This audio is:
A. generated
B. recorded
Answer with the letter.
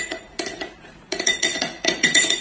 A